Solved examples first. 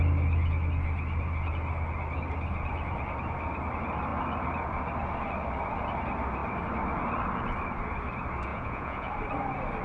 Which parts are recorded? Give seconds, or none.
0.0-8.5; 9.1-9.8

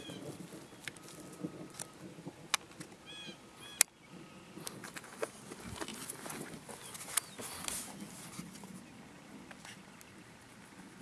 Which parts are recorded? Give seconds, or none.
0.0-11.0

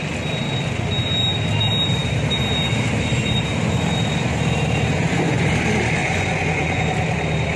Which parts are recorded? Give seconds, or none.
0.0-4.9; 5.5-6.0; 6.8-7.6